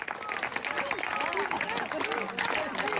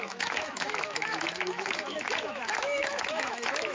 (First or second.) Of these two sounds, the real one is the first